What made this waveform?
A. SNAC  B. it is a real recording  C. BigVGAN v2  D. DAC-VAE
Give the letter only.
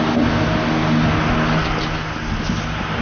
B